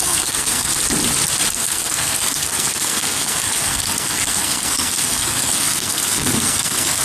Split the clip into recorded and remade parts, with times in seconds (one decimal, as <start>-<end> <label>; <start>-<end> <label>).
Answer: 0.0-0.7 remade; 0.7-1.5 recorded; 1.5-7.0 remade